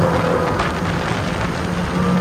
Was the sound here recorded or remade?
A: recorded